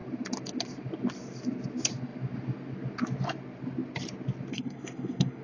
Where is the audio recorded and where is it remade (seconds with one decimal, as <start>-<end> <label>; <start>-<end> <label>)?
0.0-4.5 recorded; 4.5-5.4 remade